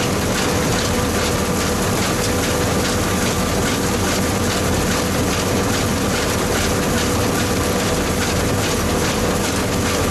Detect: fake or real real